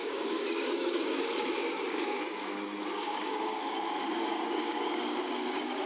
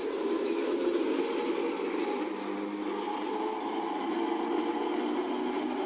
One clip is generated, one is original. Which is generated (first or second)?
first